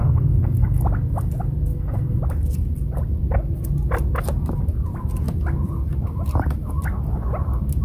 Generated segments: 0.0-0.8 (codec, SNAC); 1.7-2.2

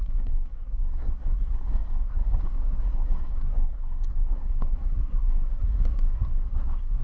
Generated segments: 0.0-7.0 (codec, SNAC)